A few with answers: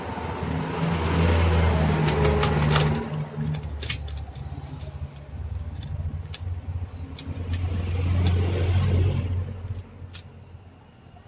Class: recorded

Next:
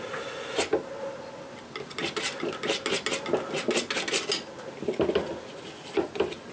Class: recorded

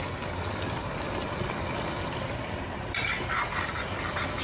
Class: recorded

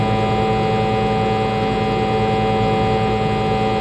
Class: recorded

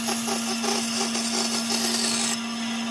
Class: recorded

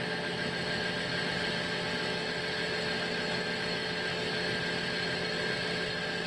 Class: recorded